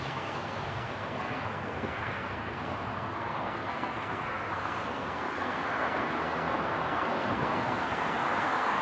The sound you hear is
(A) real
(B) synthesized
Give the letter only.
B